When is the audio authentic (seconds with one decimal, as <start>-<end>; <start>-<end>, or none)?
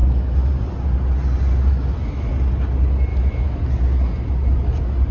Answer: 0.5-1.7; 2.3-3.1; 3.6-5.1